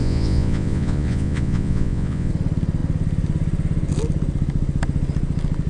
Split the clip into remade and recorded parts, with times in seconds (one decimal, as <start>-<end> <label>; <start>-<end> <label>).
0.0-2.3 remade; 2.3-5.7 recorded